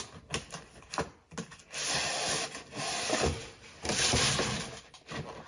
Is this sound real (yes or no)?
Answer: yes